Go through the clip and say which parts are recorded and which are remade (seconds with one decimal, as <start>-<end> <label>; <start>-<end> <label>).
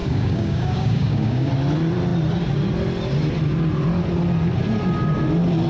0.0-1.5 remade; 1.5-5.7 recorded